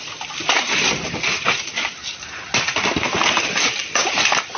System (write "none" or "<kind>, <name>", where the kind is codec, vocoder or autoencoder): none